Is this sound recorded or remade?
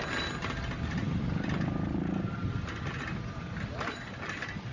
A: recorded